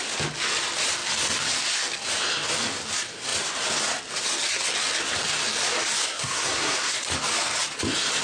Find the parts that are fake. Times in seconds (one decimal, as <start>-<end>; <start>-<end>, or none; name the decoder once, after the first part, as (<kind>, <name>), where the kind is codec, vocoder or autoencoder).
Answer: 6.0-7.0 (codec, SNAC)